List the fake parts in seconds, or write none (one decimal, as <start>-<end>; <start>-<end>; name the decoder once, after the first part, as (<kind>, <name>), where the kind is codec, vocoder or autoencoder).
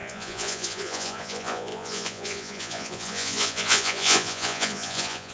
0.0-5.3 (vocoder, Vocos)